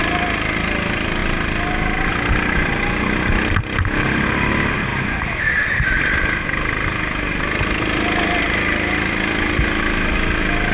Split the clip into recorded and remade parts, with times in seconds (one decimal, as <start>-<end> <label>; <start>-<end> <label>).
0.0-10.7 recorded